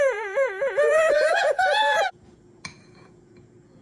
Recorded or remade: remade